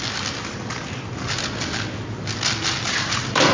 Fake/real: real